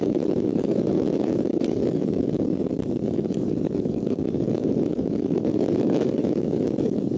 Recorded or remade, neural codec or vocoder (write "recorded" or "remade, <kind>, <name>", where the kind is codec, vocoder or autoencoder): remade, codec, DAC